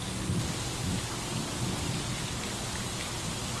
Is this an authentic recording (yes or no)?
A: yes